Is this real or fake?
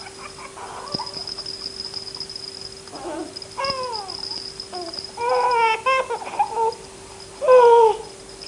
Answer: real